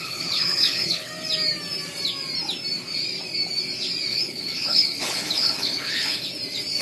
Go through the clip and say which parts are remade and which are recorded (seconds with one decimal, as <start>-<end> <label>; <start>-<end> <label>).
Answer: 0.0-1.1 remade; 1.1-4.1 recorded; 4.1-6.3 remade; 6.3-6.8 recorded